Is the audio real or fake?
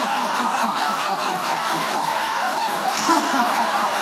fake